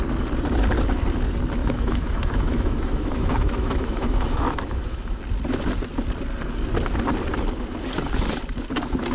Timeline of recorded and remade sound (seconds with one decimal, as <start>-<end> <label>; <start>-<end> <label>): 0.0-1.6 recorded; 1.6-5.2 remade; 5.2-9.1 recorded